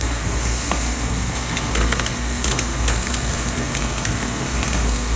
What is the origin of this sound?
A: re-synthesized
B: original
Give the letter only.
A